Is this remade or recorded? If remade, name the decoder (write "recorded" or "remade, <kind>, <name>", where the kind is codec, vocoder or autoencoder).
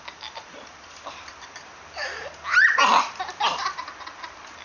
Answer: remade, vocoder, BigVGAN v2